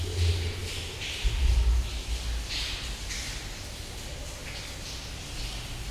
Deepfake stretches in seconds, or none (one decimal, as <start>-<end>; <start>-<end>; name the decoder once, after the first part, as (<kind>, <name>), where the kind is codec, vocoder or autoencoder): none